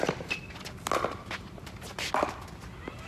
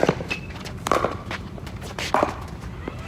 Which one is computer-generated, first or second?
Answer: second